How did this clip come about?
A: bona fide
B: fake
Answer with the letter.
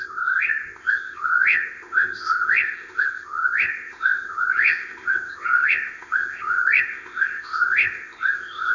B